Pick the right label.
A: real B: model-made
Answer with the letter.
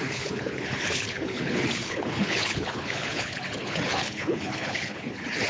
B